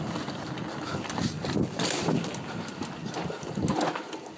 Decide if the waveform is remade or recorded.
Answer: recorded